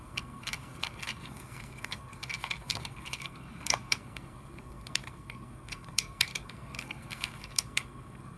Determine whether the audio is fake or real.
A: fake